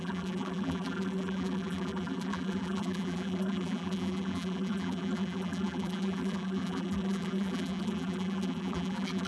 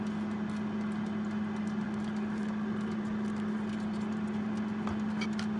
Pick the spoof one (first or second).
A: first